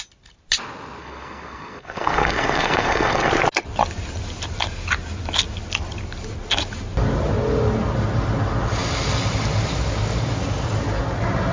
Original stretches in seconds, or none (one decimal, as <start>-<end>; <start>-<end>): 0.0-1.0; 3.3-11.5